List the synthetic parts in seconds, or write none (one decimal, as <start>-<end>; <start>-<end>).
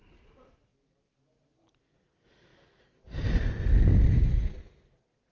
none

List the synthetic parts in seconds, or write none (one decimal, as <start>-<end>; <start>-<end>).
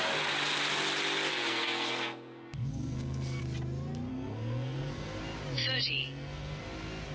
1.3-3.4; 4.1-5.2; 6.0-6.6